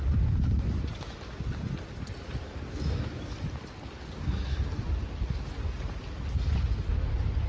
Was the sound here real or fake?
real